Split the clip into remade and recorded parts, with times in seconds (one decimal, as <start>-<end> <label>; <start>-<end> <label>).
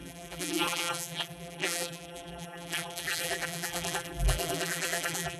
0.0-5.4 remade